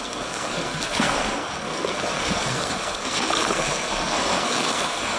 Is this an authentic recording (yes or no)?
no